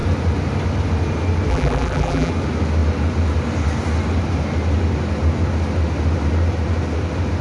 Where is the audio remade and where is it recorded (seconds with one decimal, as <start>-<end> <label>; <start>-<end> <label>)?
0.0-1.5 recorded; 1.5-2.3 remade; 2.3-7.4 recorded